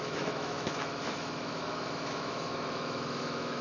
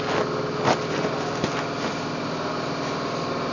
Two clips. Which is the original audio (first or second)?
second